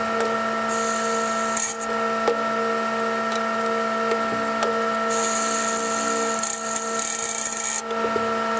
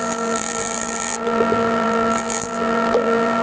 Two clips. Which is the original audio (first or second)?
first